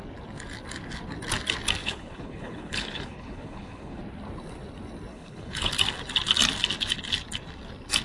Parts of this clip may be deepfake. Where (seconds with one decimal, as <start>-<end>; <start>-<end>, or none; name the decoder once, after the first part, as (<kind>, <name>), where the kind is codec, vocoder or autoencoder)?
1.8-4.0 (codec, HILCodec); 5.1-5.7